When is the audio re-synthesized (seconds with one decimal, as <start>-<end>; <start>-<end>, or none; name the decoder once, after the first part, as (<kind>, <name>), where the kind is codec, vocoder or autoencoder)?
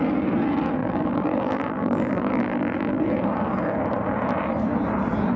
0.8-3.0 (vocoder, BigVGAN v2)